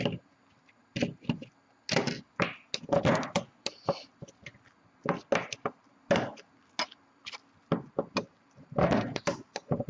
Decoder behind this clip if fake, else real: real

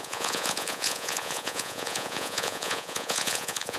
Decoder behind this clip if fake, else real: fake, vocoder, Vocos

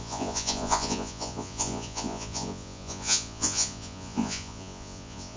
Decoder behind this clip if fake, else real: fake, vocoder, Vocos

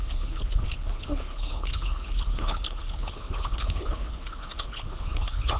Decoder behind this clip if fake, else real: fake, codec, HILCodec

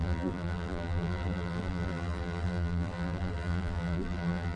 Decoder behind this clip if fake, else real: fake, vocoder, BigVGAN v2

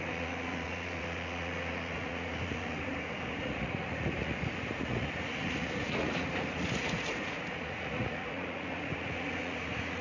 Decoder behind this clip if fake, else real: fake, vocoder, Vocos